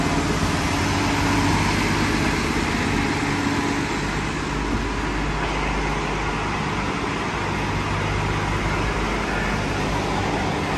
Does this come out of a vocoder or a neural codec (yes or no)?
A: no